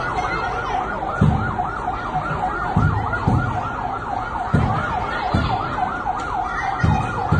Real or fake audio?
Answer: real